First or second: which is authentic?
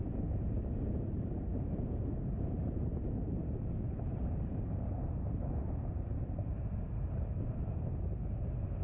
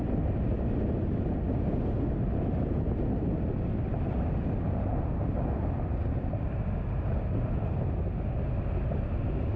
second